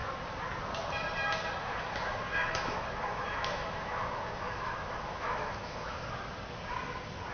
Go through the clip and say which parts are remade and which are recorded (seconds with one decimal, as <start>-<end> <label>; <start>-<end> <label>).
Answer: 0.0-1.6 recorded; 1.6-6.0 remade; 6.0-7.3 recorded